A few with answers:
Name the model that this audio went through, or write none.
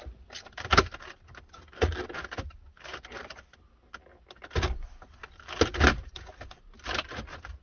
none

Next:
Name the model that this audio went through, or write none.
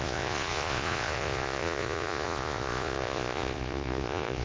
vocoder, Vocos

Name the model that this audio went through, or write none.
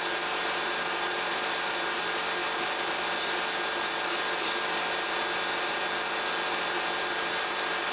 none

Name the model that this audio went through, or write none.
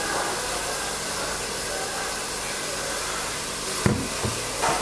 none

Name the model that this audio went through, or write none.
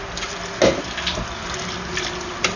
none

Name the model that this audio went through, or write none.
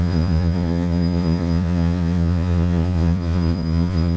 vocoder, Vocos